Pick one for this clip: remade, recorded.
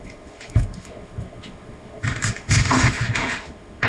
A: remade